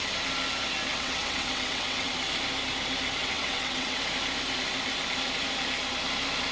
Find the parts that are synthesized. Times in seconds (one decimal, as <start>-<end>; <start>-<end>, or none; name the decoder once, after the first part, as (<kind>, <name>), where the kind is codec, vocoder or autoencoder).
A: 0.9-2.1 (vocoder, WaveNeXt); 3.2-4.0